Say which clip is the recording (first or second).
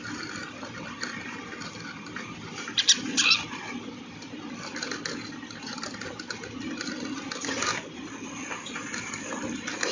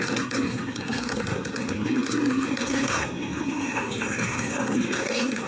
first